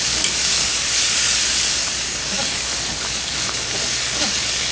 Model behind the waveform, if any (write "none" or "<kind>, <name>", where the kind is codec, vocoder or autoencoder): codec, DAC